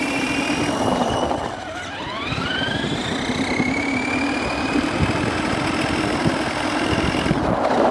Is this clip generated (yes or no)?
no